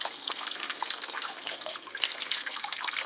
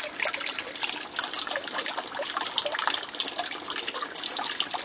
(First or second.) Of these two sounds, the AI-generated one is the first